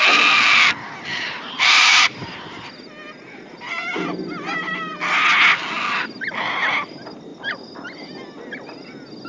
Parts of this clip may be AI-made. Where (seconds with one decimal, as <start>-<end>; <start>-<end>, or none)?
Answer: 1.1-2.7; 7.3-8.1